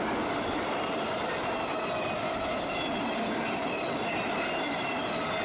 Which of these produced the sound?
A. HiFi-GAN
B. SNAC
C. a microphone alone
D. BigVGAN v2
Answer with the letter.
C